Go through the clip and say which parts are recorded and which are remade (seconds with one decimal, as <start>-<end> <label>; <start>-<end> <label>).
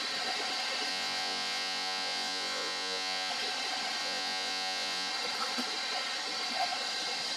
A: 0.0-0.9 recorded; 0.9-3.3 remade; 3.3-4.0 recorded; 4.0-5.1 remade; 5.1-7.4 recorded